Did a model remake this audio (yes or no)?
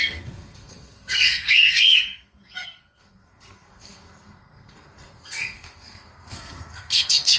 yes